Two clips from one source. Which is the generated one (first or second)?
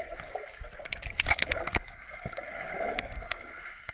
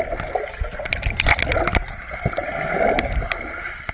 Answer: first